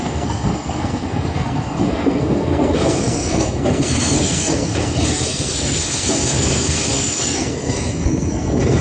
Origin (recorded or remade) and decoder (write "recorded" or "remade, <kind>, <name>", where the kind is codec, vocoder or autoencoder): remade, codec, SNAC